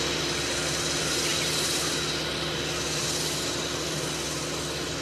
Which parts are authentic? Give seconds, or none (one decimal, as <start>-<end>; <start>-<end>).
0.0-5.0